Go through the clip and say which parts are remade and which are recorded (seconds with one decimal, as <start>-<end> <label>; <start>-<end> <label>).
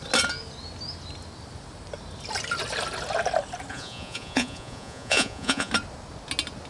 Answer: 0.0-3.7 recorded; 3.7-5.7 remade; 5.7-6.7 recorded